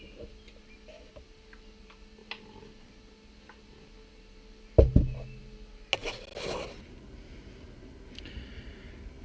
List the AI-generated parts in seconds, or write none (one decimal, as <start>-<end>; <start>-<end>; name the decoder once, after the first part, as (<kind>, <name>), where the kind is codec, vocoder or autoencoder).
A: none